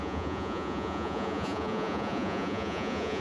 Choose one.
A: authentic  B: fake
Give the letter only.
B